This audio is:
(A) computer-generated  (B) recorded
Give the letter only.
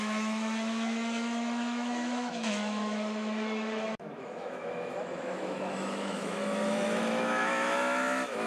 A